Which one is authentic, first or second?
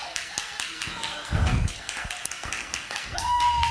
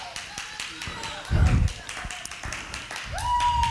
second